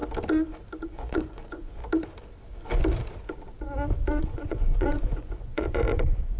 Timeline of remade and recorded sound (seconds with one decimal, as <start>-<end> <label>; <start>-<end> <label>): 0.0-0.8 recorded; 0.8-1.8 remade; 1.8-4.2 recorded; 4.2-6.4 remade